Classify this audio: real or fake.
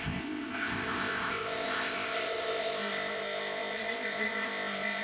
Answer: fake